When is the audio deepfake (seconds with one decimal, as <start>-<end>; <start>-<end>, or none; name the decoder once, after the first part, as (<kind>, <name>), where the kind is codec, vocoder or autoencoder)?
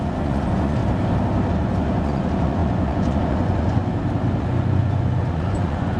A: 0.0-0.8 (vocoder, Vocos); 1.5-3.8; 4.4-6.0